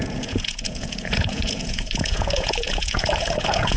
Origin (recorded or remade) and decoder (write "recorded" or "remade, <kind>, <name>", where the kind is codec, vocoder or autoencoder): remade, vocoder, Vocos